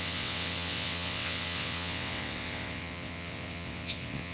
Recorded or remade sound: remade